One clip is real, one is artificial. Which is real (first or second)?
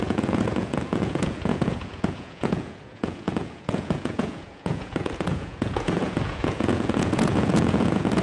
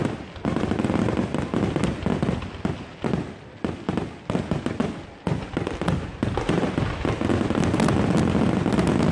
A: second